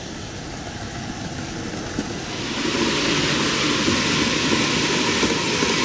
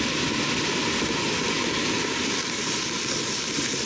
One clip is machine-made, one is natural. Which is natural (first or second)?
first